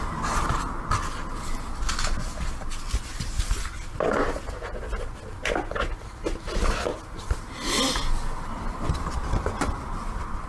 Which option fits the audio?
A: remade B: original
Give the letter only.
B